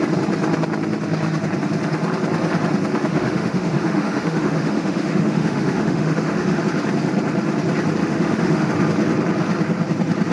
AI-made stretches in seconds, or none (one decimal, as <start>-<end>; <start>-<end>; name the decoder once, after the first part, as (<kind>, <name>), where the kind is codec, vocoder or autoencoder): 3.1-6.6 (autoencoder, DAC-VAE); 8.0-8.7